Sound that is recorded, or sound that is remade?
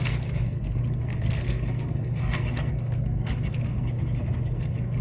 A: remade